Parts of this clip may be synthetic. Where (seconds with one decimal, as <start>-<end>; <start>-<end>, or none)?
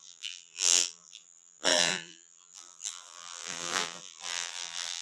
0.0-5.0